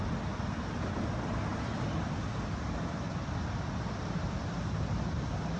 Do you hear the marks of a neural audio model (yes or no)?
no